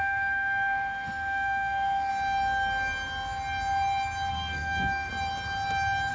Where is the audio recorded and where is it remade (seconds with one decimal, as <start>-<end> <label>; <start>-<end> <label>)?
0.0-2.1 remade; 2.1-4.3 recorded; 4.3-5.1 remade; 5.1-6.1 recorded